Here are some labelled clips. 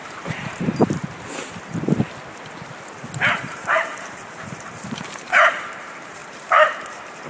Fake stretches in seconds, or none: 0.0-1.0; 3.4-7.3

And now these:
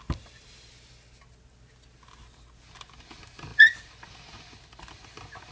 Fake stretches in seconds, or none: none

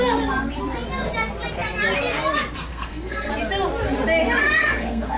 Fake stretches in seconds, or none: 2.7-3.3; 4.2-5.2

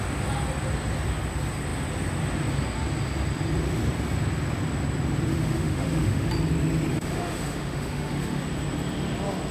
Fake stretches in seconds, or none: 5.3-6.3; 6.9-8.4

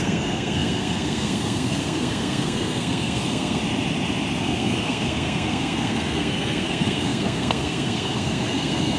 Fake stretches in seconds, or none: 0.0-3.6; 4.4-9.0